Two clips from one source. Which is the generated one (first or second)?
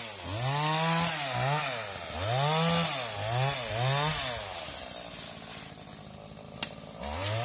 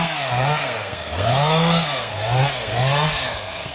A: second